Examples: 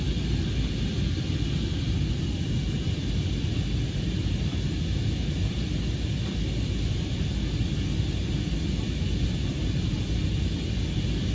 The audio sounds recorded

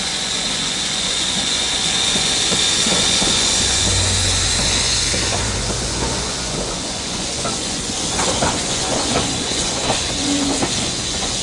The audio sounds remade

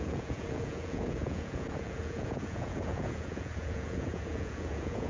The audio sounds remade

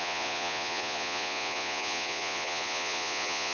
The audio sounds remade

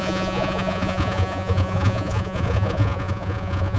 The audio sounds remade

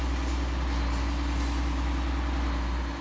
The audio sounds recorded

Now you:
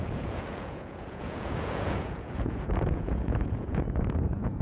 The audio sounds remade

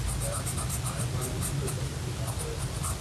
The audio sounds recorded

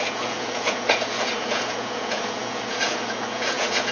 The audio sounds remade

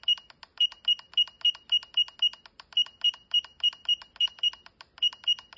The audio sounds recorded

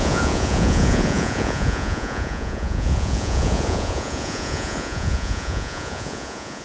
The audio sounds remade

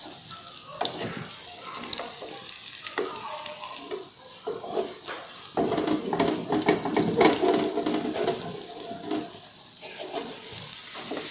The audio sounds recorded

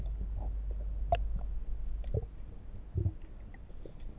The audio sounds recorded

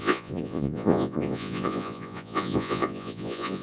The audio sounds remade